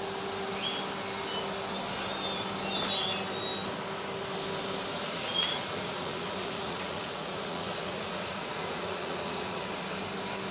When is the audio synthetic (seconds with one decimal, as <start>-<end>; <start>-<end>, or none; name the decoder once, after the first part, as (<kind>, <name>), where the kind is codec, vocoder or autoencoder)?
4.9-9.9 (vocoder, Vocos)